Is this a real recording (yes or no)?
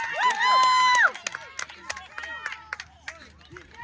yes